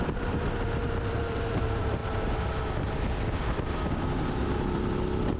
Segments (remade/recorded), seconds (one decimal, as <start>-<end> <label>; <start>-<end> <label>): 0.0-2.0 remade; 2.0-5.4 recorded